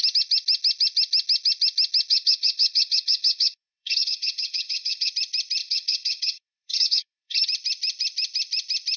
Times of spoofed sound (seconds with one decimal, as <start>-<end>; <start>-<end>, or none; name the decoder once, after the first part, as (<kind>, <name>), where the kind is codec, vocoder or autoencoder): 2.1-5.1 (codec, HILCodec); 5.6-7.4